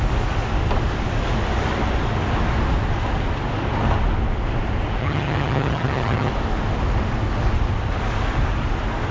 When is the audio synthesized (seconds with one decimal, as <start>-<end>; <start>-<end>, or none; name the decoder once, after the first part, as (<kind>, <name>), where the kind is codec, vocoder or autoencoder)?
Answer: 5.0-6.3 (vocoder, HiFi-GAN)